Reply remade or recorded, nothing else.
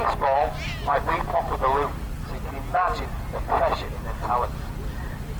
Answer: recorded